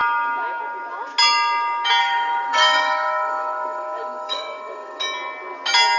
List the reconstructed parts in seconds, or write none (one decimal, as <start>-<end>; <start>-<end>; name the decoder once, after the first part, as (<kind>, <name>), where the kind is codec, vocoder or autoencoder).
2.0-5.0 (codec, DAC)